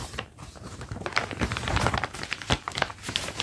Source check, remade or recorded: remade